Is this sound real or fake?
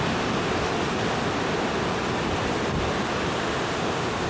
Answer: fake